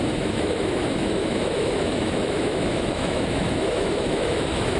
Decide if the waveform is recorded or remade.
remade